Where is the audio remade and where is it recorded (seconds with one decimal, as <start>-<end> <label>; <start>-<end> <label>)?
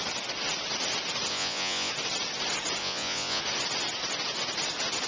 0.0-1.3 recorded; 1.3-1.9 remade; 1.9-2.8 recorded; 2.8-3.4 remade; 3.4-5.1 recorded